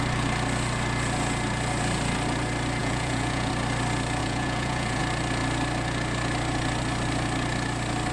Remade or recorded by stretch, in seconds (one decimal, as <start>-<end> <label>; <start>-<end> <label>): 0.0-2.8 recorded; 2.8-3.5 remade; 3.5-4.2 recorded; 4.2-5.0 remade; 5.0-8.1 recorded